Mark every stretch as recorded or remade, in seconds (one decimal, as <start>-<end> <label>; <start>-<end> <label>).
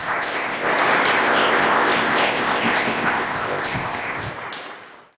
0.0-0.7 remade; 0.7-1.2 recorded; 1.2-4.3 remade; 4.3-5.2 recorded